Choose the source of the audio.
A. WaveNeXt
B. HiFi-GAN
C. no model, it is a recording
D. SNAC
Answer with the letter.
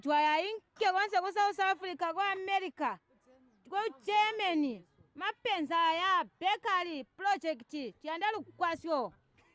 C